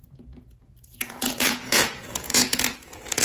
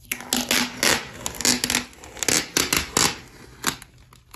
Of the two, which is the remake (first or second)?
first